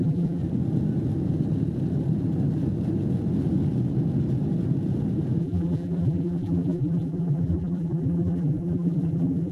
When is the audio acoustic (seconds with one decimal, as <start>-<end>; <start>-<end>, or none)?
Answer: 0.4-5.4